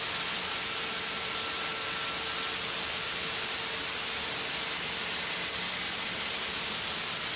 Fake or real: real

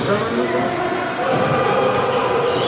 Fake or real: real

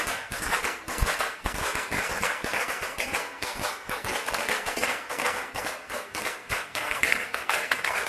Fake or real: fake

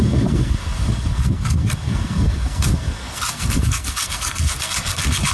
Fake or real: fake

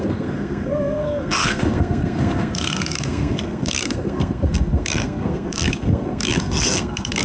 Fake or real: fake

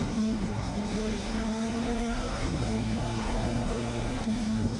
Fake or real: fake